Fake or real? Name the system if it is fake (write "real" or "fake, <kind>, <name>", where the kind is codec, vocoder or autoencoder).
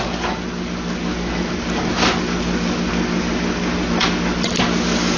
real